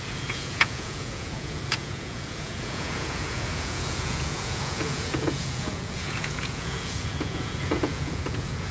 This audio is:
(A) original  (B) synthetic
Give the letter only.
B